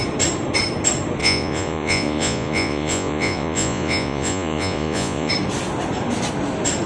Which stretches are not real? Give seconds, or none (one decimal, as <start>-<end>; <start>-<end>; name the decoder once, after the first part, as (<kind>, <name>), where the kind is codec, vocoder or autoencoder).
1.2-5.3 (vocoder, Vocos)